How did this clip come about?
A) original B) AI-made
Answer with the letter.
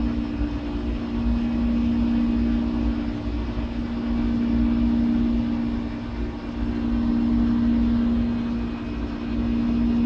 A